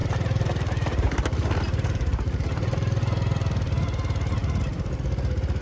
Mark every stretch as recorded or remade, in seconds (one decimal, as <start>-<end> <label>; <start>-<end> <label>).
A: 0.0-3.0 remade; 3.0-5.6 recorded